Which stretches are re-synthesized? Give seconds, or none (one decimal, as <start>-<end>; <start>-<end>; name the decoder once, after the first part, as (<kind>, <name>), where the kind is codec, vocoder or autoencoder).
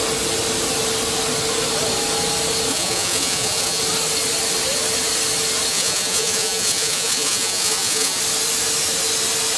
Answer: 2.7-3.8 (vocoder, Vocos); 5.7-8.2